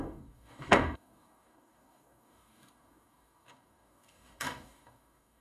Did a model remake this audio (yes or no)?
yes